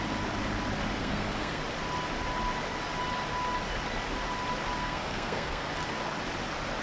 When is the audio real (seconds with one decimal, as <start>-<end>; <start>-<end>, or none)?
0.0-1.0; 1.6-4.8; 5.7-6.8